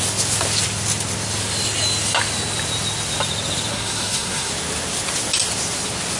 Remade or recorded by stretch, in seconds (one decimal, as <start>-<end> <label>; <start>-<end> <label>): 0.0-3.7 recorded; 3.7-4.5 remade; 4.5-6.2 recorded